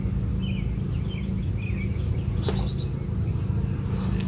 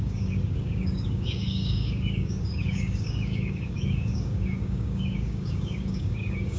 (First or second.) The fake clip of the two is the second